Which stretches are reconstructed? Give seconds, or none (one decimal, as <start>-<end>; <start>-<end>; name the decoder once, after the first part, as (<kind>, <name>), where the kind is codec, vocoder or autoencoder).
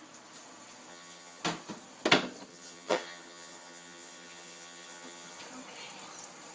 0.9-1.4 (vocoder, HiFi-GAN); 2.5-5.4